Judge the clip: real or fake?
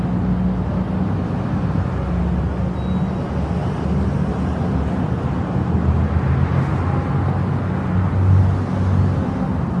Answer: real